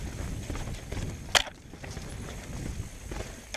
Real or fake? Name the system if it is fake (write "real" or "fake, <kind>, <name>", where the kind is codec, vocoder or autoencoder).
real